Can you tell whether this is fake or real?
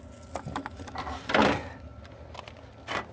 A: real